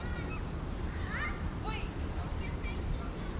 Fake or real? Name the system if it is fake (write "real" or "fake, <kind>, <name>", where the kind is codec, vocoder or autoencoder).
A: fake, vocoder, BigVGAN v2